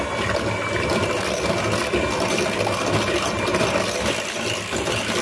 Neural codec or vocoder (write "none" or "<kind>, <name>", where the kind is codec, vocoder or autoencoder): none